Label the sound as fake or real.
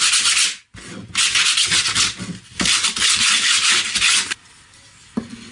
real